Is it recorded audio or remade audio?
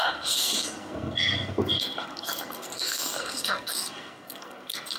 remade